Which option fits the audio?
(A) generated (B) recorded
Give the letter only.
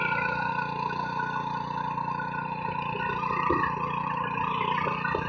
B